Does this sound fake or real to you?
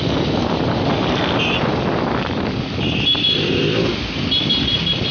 real